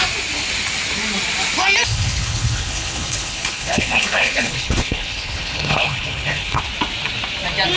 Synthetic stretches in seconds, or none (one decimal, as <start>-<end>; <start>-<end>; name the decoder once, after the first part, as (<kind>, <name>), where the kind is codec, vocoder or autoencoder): 1.9-6.6 (codec, HILCodec)